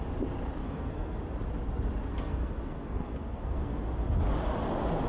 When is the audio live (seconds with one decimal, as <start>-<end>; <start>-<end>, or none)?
0.0-0.6; 1.2-2.1; 3.8-5.1